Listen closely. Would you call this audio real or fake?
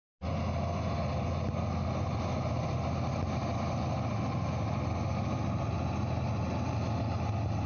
real